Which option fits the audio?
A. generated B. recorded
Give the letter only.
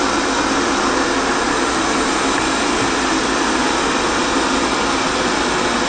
B